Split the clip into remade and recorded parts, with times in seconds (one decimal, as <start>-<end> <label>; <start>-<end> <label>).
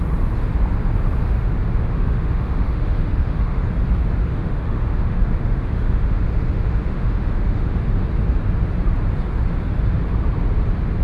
0.0-1.2 recorded; 1.2-3.6 remade; 3.6-4.0 recorded; 4.0-8.1 remade; 8.1-11.0 recorded